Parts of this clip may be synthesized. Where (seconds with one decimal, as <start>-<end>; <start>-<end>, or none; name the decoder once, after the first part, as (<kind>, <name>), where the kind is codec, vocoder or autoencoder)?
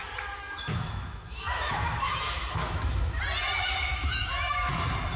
0.4-3.2 (autoencoder, DAC-VAE); 3.9-4.7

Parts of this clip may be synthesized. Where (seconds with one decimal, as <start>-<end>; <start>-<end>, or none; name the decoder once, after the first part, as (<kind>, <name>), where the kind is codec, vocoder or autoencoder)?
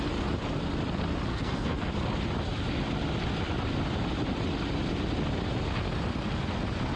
1.3-1.9 (codec, SNAC)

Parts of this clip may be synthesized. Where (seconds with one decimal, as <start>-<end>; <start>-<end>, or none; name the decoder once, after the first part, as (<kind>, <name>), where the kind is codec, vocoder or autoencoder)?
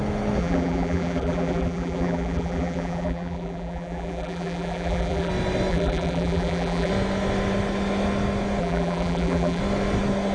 0.4-5.3 (vocoder, BigVGAN v2); 5.7-6.9; 8.6-9.6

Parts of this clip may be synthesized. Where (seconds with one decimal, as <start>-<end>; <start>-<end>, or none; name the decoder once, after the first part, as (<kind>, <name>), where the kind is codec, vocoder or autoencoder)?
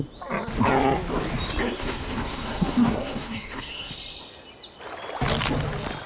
1.6-3.9 (codec, SNAC)